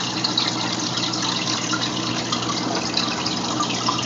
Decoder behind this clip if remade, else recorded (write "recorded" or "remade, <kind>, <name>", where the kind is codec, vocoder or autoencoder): recorded